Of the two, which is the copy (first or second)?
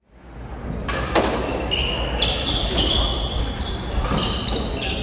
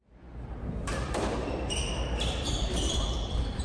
second